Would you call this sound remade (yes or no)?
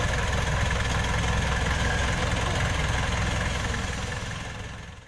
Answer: no